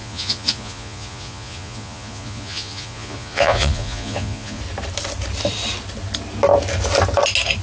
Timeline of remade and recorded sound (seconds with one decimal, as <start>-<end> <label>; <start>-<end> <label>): 0.0-4.6 remade; 4.6-7.6 recorded